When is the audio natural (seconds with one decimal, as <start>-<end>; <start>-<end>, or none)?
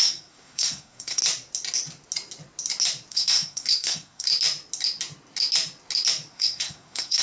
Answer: 1.2-3.1; 4.3-6.3